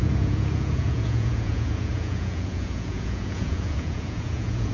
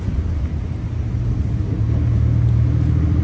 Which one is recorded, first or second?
second